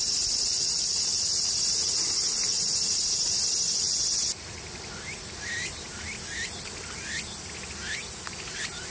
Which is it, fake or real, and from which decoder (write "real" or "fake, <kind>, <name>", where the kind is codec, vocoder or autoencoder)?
real